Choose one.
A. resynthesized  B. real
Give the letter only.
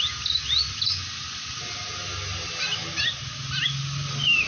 B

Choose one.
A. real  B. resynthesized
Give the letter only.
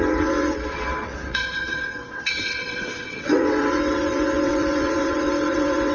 B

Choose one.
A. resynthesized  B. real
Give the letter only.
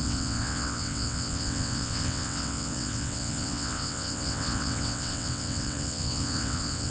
A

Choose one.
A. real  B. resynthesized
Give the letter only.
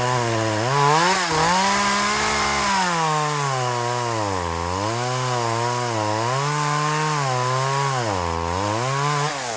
A